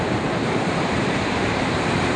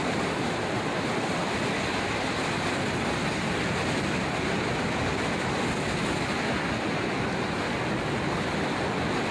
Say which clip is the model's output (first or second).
first